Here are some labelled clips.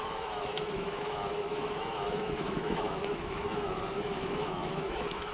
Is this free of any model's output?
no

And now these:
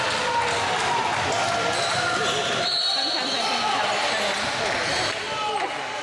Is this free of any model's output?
yes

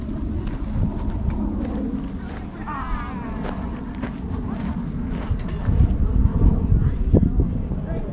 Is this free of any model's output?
yes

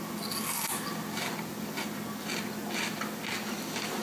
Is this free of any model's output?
yes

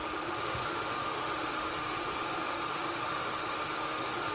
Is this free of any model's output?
no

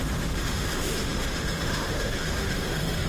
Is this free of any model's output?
no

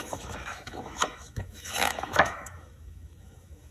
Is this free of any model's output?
no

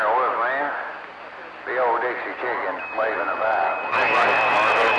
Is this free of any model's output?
yes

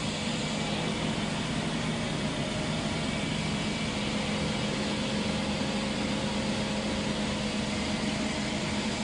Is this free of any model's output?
yes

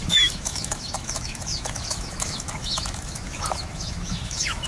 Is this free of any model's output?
no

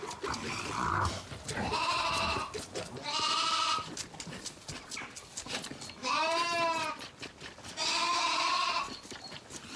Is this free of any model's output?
yes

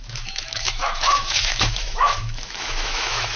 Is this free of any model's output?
no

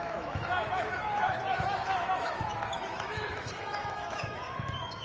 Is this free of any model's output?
no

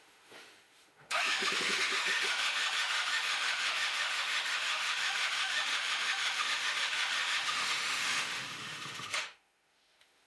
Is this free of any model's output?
no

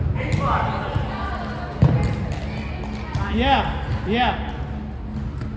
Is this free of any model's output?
yes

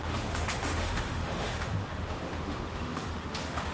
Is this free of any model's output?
no